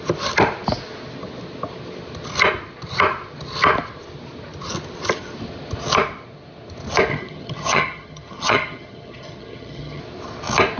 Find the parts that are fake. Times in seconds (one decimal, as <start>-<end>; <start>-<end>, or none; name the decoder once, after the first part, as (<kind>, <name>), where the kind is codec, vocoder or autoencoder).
7.1-10.0 (vocoder, HiFi-GAN)